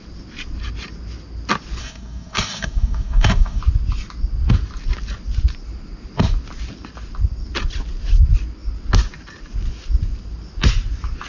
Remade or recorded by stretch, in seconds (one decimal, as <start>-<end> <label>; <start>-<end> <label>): 0.0-1.8 recorded; 1.8-3.6 remade; 3.6-11.3 recorded